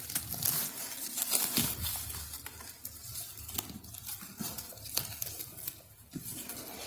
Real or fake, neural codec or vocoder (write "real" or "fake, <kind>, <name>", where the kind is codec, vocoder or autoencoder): real